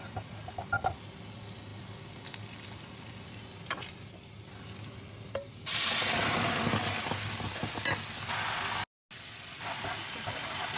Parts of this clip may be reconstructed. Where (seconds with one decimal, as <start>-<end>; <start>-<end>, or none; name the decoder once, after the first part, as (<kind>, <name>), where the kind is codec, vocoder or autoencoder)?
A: none